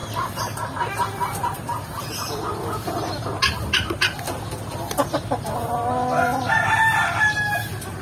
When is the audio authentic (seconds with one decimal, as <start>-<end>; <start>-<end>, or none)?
0.0-8.0